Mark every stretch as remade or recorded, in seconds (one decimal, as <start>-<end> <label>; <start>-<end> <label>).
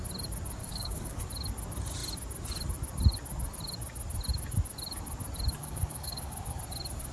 0.0-0.6 recorded; 0.6-1.2 remade; 1.2-5.6 recorded; 5.6-6.6 remade; 6.6-7.1 recorded